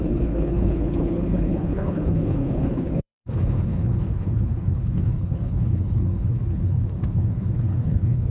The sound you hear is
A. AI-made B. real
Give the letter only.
A